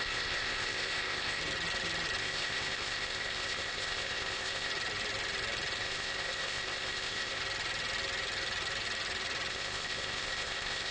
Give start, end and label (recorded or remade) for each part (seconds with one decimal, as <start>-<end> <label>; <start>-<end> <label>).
0.0-1.4 remade; 1.4-2.2 recorded; 2.2-4.7 remade; 4.7-5.8 recorded; 5.8-7.4 remade; 7.4-9.5 recorded; 9.5-10.9 remade